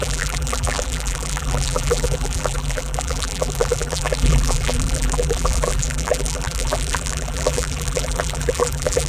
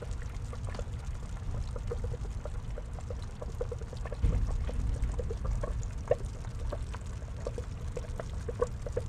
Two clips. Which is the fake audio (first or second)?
first